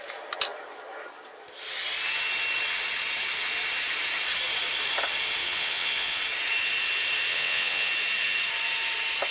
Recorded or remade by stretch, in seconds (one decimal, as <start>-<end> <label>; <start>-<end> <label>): 0.0-5.4 recorded; 5.4-6.2 remade; 6.2-7.3 recorded; 7.3-7.9 remade; 7.9-9.3 recorded